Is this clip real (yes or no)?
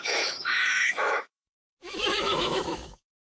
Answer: no